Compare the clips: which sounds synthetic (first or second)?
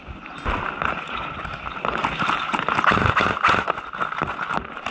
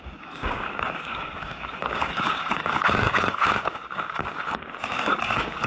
second